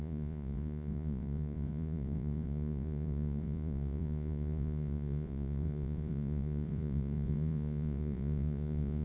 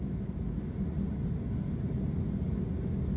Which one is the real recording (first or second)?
second